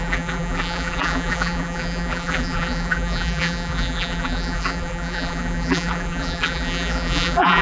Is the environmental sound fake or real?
fake